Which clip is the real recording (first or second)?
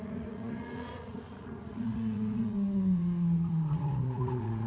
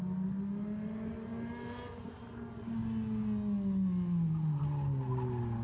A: second